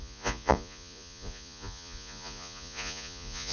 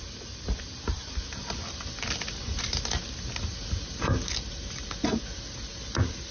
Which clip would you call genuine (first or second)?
second